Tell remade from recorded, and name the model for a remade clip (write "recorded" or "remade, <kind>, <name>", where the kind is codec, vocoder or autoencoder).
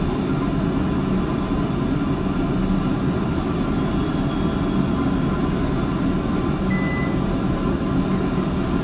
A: recorded